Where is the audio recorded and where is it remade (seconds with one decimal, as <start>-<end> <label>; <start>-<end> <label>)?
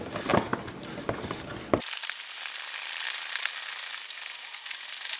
0.0-5.2 recorded